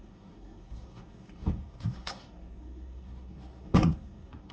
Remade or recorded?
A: remade